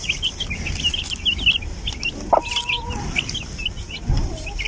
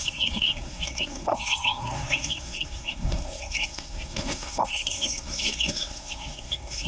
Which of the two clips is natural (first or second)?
first